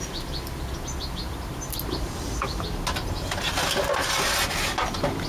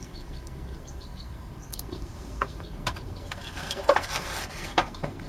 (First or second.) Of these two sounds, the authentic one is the first